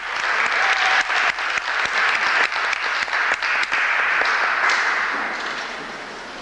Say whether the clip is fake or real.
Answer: real